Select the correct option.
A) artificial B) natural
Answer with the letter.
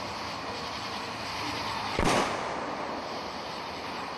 B